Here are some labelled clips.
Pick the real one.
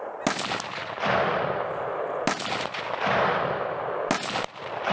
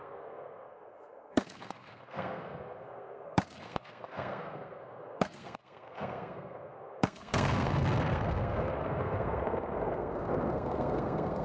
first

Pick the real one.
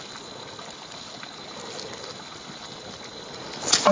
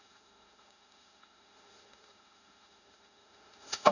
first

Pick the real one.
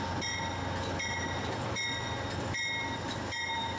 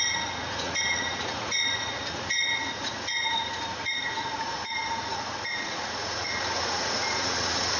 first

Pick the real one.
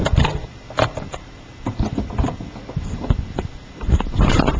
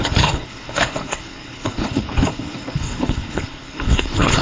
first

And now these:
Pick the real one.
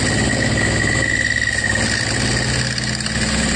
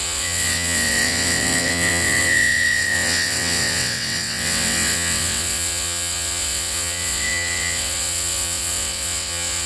first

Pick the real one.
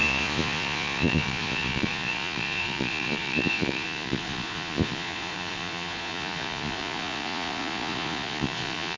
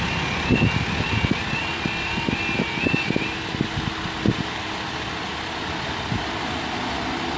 second